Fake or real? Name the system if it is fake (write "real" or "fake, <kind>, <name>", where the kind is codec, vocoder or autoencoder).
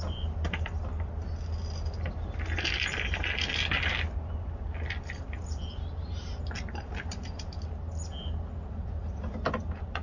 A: real